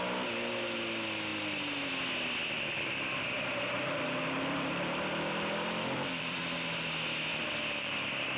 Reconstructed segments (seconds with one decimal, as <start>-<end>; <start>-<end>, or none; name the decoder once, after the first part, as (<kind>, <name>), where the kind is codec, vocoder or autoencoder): 2.4-6.4 (vocoder, BigVGAN v2); 7.3-8.4